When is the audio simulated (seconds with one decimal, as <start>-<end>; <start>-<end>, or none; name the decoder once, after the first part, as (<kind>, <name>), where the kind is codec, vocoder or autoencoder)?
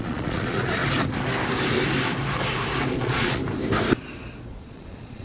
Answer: 0.0-0.8 (vocoder, Vocos); 2.9-3.4; 4.5-5.2